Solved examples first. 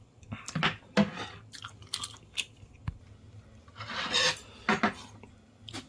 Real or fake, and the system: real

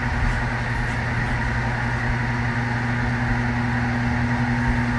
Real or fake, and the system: real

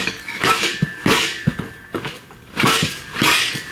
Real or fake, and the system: fake, codec, DAC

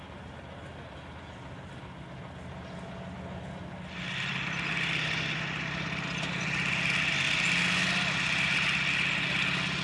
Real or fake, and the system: real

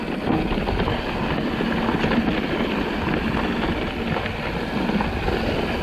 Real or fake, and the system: real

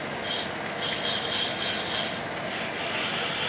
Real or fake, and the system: real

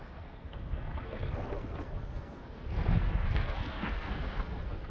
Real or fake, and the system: fake, codec, SNAC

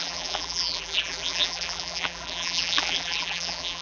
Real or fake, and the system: fake, vocoder, BigVGAN v2